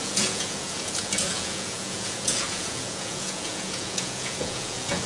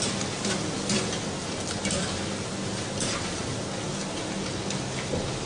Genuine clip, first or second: second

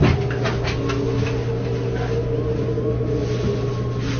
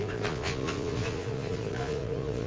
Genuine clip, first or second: first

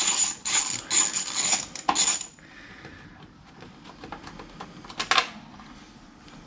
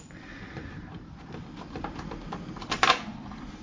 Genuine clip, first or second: first